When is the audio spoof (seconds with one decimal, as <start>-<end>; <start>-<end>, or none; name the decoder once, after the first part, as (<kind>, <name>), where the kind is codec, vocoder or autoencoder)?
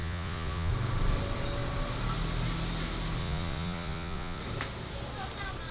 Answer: 0.0-0.7 (vocoder, Vocos); 3.2-4.4